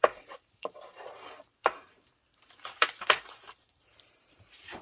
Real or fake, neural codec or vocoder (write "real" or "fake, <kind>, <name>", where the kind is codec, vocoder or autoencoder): fake, vocoder, BigVGAN v2